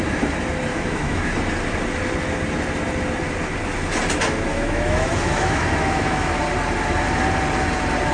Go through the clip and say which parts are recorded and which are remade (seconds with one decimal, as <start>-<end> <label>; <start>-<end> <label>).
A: 0.0-0.7 recorded; 0.7-1.3 remade; 1.3-4.5 recorded; 4.5-6.4 remade; 6.4-8.1 recorded